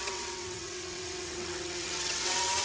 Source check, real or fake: fake